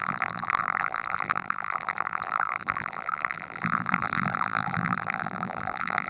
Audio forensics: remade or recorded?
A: remade